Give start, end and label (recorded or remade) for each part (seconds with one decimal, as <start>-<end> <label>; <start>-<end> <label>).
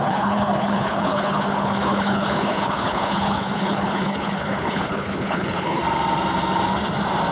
0.0-5.8 remade; 5.8-7.3 recorded